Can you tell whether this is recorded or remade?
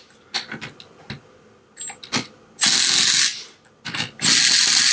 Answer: recorded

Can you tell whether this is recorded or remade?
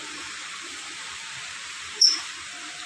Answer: remade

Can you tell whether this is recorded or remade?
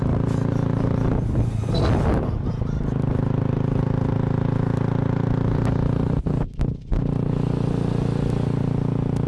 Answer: recorded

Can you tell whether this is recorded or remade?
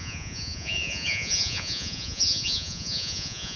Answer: remade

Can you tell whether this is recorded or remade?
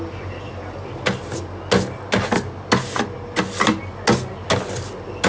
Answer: recorded